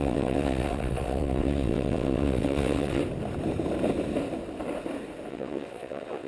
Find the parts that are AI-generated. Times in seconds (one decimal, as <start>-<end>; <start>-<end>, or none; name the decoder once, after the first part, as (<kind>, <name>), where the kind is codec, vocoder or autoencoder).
0.0-3.0 (vocoder, WaveNeXt); 5.3-6.3